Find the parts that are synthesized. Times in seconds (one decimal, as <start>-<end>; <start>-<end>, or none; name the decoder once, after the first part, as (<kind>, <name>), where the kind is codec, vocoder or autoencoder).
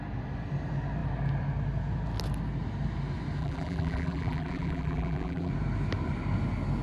3.4-5.5 (vocoder, BigVGAN v2)